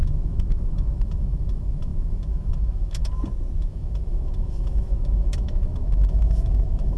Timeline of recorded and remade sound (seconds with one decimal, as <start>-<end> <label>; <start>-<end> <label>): 0.0-3.0 remade; 3.0-3.6 recorded; 3.6-7.0 remade